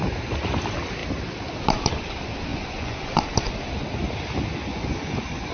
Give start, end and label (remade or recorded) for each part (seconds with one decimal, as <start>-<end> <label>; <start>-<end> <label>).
0.0-2.5 recorded; 2.5-3.2 remade; 3.2-4.7 recorded; 4.7-5.5 remade